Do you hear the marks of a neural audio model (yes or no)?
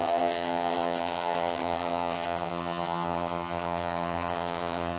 yes